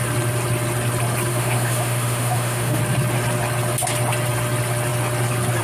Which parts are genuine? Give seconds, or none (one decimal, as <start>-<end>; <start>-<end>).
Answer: 0.0-1.3; 2.8-5.6